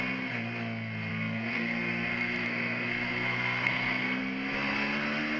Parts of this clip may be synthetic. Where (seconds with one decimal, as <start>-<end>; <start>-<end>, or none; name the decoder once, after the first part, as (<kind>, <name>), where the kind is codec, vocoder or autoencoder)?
1.1-4.2 (codec, SNAC)